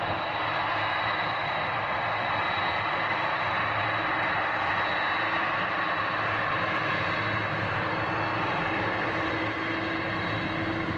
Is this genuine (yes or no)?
yes